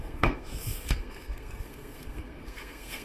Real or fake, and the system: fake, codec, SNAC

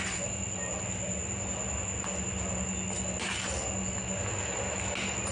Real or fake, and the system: real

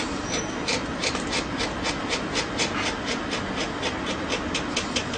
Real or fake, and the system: real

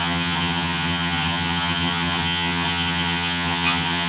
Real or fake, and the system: fake, vocoder, HiFi-GAN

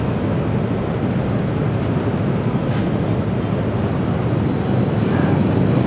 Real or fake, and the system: real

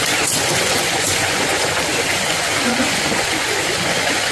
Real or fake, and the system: fake, vocoder, Vocos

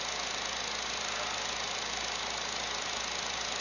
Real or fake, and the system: real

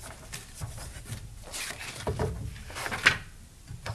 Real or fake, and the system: real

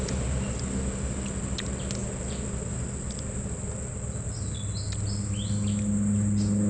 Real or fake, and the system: real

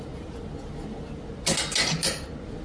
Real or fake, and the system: real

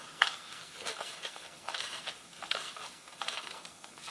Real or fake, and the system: fake, codec, SNAC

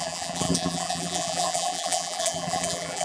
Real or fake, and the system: fake, vocoder, BigVGAN v2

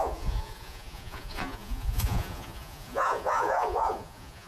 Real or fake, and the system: fake, vocoder, Vocos